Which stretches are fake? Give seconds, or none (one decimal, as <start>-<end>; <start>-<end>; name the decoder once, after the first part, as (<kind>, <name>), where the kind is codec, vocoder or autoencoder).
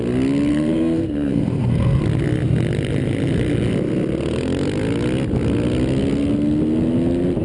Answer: 0.5-2.0 (codec, SNAC)